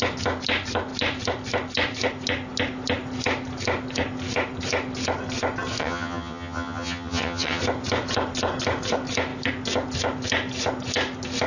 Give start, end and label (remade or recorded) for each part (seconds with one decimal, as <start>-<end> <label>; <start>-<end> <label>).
0.0-5.8 recorded; 5.8-7.6 remade; 7.6-11.5 recorded